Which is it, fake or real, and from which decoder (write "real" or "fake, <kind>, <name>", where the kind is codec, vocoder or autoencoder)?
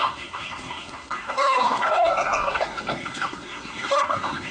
fake, codec, SNAC